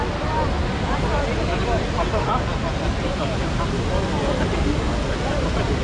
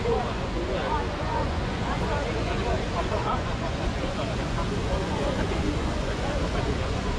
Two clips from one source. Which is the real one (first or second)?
first